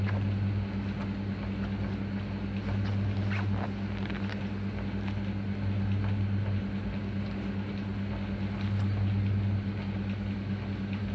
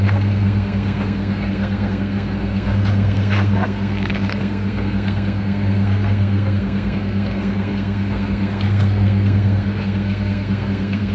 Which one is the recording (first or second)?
first